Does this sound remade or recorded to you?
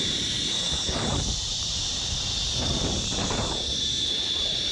remade